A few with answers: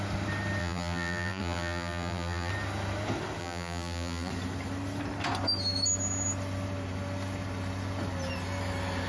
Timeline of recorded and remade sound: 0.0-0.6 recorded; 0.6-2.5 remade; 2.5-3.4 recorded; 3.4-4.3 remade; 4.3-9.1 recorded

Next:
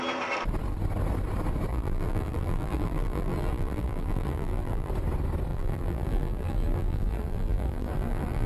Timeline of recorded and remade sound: 0.0-1.7 recorded; 1.7-4.9 remade; 4.9-5.5 recorded; 5.5-8.5 remade

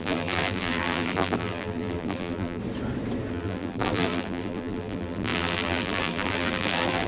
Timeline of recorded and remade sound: 0.0-2.6 remade; 2.6-3.3 recorded; 3.3-7.1 remade